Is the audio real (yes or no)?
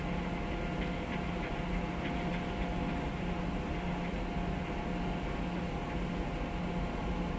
yes